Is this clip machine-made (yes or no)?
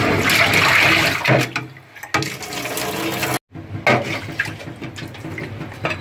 no